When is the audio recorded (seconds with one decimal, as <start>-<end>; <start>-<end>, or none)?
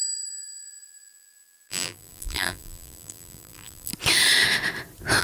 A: 3.9-5.2